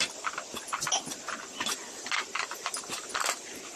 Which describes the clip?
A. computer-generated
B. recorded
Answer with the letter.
B